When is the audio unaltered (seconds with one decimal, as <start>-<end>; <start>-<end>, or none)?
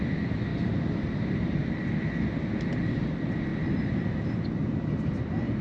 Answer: 0.0-0.5; 1.9-3.5